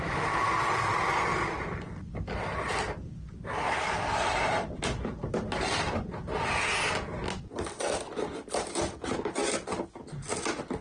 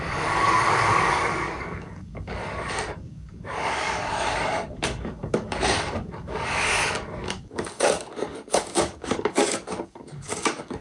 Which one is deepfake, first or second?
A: second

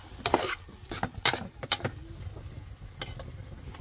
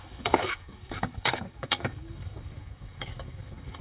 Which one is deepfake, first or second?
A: second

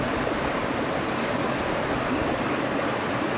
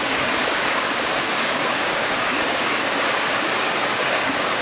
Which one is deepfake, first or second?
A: second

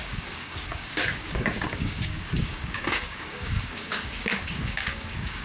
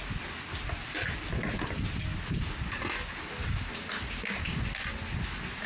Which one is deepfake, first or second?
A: first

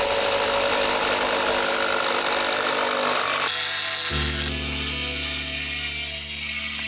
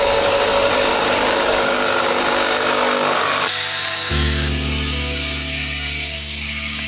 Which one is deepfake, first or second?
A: second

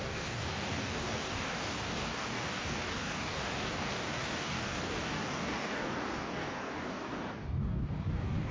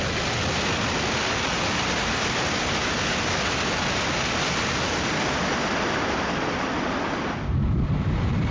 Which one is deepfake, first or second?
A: first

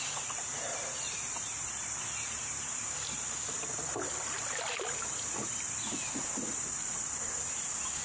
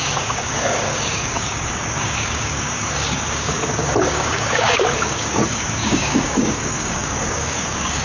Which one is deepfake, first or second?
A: second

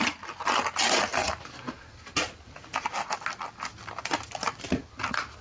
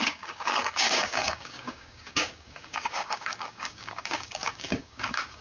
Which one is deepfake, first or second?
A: second